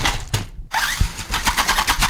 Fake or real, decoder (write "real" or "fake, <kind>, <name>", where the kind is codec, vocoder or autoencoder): fake, vocoder, BigVGAN v2